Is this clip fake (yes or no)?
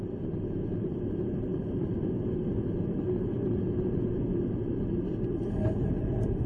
no